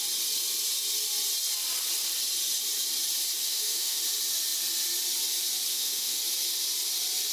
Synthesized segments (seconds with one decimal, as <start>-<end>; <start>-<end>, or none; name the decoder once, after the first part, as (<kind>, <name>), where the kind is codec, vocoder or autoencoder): 3.4-4.0 (autoencoder, DAC-VAE); 5.7-6.2